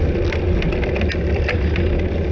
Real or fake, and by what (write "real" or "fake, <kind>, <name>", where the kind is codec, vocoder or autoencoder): real